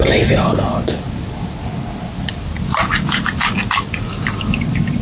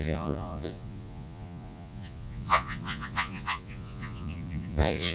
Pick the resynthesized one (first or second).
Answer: second